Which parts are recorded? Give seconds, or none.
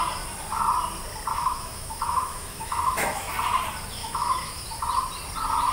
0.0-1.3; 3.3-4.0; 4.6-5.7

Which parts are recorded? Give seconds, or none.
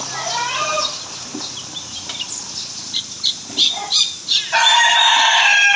0.0-0.7; 4.2-4.7; 5.2-5.8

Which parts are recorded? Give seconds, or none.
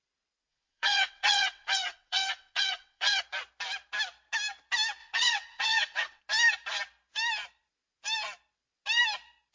0.0-0.5; 3.2-5.0; 6.2-9.5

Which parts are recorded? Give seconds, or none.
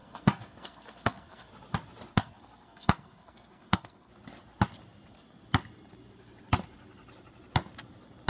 1.5-2.1; 4.1-8.3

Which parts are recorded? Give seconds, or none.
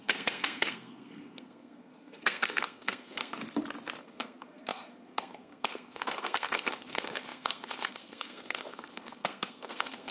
3.4-4.0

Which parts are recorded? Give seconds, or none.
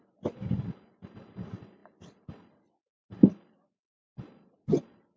0.0-5.2